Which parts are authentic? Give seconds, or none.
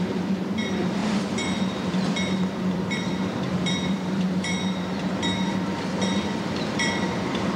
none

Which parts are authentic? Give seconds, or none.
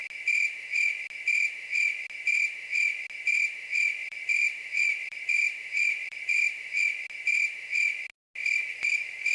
0.0-4.0; 6.8-9.3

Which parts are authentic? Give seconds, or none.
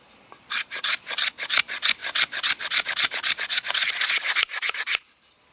none